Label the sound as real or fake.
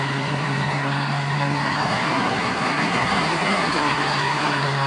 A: fake